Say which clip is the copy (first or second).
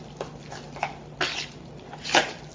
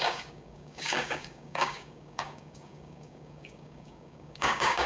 second